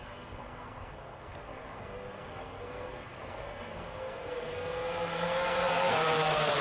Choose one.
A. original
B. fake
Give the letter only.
B